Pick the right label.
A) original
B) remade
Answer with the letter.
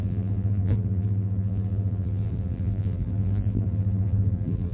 B